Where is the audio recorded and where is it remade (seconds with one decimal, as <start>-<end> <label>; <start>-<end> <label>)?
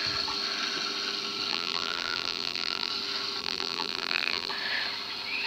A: 0.0-1.5 recorded; 1.5-2.9 remade; 2.9-3.4 recorded; 3.4-4.5 remade; 4.5-5.5 recorded